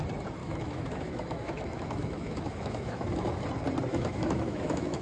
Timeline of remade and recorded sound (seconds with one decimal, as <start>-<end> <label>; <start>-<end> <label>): 0.0-0.4 recorded; 0.4-3.4 remade; 3.4-3.9 recorded; 3.9-5.0 remade